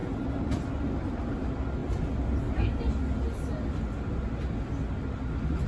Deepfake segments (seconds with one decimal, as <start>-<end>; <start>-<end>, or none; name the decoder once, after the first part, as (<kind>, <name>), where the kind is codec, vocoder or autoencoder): none